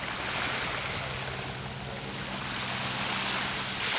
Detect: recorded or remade recorded